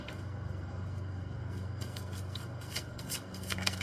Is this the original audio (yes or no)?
no